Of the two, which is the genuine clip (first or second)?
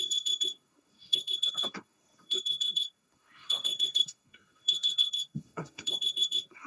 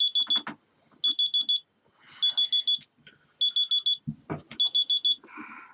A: second